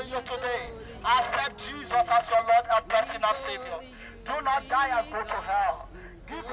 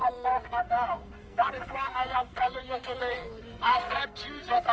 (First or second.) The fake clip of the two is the second